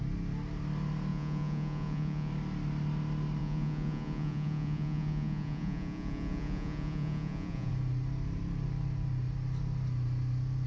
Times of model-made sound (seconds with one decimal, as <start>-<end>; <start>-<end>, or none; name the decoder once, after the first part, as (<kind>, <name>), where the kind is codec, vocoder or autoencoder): 1.1-2.3 (vocoder, Vocos); 3.4-7.7